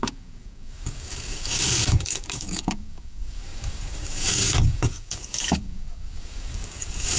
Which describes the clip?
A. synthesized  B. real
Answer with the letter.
A